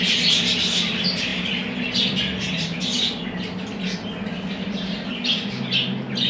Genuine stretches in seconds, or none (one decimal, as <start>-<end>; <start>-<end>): 0.0-6.3